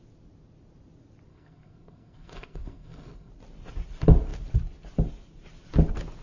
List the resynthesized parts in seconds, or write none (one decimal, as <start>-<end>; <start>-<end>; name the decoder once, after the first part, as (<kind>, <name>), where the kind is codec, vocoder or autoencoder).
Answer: 1.3-3.3 (codec, SNAC)